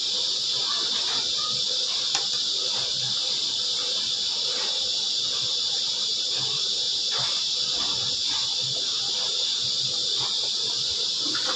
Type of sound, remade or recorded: recorded